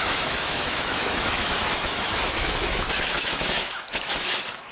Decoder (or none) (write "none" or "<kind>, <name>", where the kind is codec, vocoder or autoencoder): autoencoder, DAC-VAE